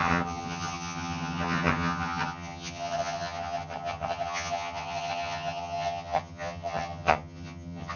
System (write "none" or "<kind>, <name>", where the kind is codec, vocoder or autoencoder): vocoder, HiFi-GAN